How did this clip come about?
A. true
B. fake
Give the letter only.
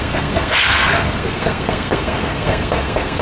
B